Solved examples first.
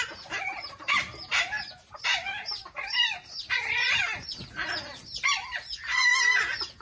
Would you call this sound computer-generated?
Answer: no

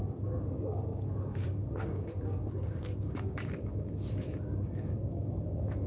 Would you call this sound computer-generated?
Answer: yes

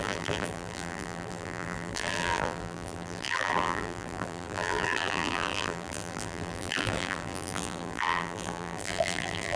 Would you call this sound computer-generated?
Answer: yes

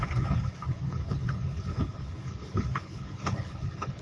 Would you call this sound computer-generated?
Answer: yes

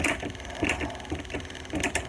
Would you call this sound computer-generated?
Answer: no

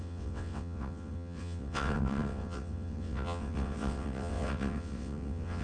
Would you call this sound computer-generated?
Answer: yes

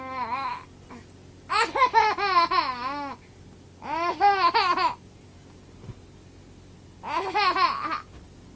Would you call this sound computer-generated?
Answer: no